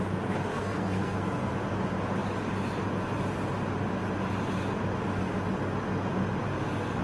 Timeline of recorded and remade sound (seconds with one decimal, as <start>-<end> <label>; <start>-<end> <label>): 0.0-0.5 recorded; 0.5-1.5 remade; 1.5-7.0 recorded